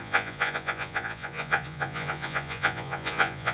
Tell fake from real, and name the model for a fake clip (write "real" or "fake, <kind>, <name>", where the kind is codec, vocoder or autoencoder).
fake, vocoder, Vocos